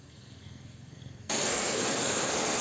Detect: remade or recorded remade